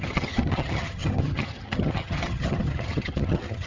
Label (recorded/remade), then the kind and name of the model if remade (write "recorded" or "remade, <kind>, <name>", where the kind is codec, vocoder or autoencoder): remade, vocoder, HiFi-GAN